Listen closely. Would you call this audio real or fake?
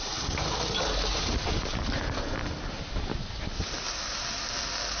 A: real